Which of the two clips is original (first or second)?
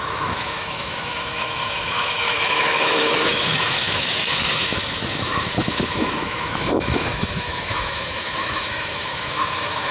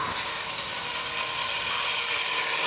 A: second